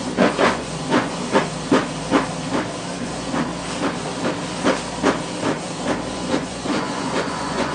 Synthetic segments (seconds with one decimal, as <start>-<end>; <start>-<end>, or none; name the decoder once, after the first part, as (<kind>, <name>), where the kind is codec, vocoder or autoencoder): 0.0-1.2 (vocoder, Vocos); 3.0-3.5; 6.1-7.7